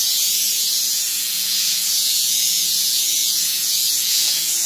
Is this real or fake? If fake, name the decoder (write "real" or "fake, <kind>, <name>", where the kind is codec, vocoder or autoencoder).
fake, vocoder, Vocos